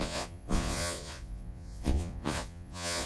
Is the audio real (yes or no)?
no